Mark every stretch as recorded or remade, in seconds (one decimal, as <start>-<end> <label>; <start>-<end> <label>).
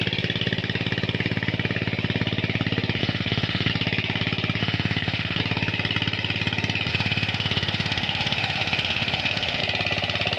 0.0-3.0 recorded; 3.0-3.7 remade; 3.7-4.6 recorded; 4.6-5.4 remade; 5.4-6.9 recorded; 6.9-9.6 remade; 9.6-10.4 recorded